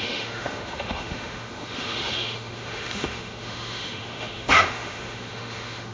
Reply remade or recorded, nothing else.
remade